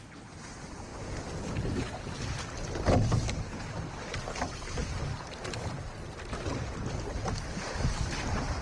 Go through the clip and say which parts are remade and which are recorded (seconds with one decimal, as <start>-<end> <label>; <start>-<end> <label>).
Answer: 0.0-4.8 recorded; 4.8-8.6 remade